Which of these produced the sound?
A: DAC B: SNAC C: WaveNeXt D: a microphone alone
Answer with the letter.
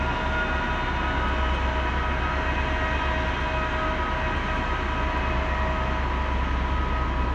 D